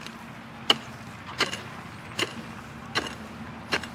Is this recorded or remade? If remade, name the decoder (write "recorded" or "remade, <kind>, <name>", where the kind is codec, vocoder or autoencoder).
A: recorded